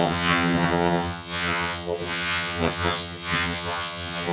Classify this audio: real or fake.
fake